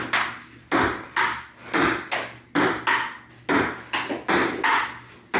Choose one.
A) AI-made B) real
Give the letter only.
B